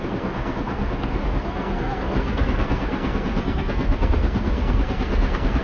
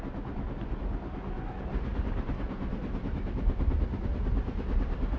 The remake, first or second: first